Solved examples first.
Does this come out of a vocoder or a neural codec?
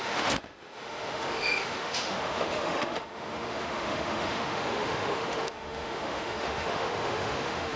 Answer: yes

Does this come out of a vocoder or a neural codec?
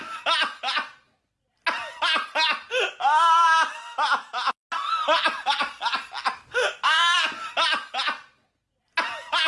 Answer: no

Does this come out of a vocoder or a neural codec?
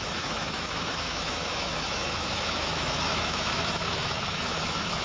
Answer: yes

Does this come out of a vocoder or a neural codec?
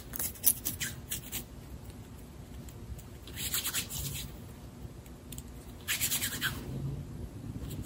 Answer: no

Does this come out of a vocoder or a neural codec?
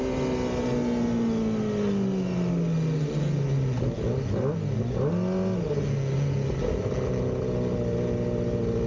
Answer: no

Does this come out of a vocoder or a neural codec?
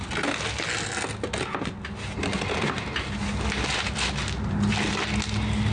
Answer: no